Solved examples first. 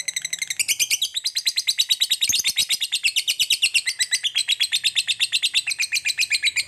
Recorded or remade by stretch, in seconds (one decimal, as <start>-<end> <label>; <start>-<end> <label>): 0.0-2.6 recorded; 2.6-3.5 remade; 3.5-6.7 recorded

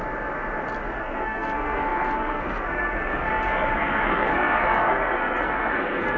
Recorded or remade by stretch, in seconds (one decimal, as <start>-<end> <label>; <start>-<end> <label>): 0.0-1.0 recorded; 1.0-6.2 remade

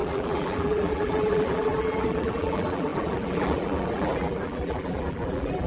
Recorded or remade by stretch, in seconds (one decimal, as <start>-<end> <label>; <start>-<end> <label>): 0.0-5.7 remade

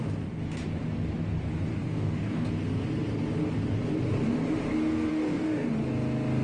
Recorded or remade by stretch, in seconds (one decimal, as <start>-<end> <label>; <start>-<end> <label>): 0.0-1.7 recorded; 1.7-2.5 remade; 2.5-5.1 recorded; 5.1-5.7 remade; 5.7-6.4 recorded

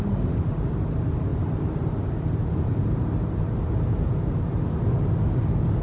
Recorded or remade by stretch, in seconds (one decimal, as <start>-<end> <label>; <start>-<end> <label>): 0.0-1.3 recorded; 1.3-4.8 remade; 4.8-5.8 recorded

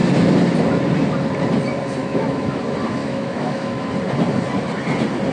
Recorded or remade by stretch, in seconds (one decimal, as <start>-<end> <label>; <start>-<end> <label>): 0.0-2.0 recorded; 2.0-2.6 remade; 2.6-3.0 recorded; 3.0-3.9 remade; 3.9-5.3 recorded

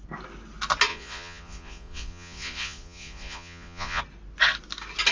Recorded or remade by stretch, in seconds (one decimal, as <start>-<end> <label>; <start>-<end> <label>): 0.0-0.9 recorded; 0.9-4.0 remade; 4.0-5.1 recorded